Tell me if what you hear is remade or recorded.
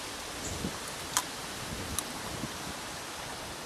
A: recorded